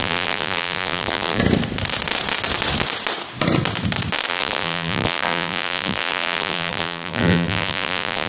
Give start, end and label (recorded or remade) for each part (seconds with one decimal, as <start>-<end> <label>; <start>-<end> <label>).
0.0-1.4 remade; 1.4-4.3 recorded; 4.3-8.3 remade